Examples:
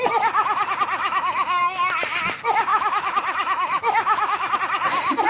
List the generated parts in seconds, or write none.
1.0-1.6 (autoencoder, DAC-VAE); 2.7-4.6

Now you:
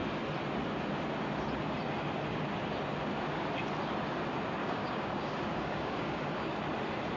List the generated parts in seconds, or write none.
4.6-6.6 (codec, DAC)

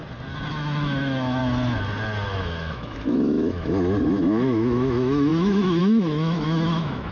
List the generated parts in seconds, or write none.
0.5-1.4 (autoencoder, DAC-VAE); 2.4-7.1

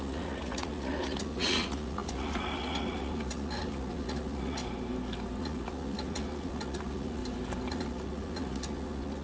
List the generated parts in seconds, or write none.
0.0-4.6 (vocoder, Vocos); 5.4-7.2; 7.7-9.2